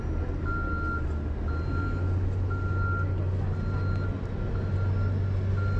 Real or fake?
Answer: real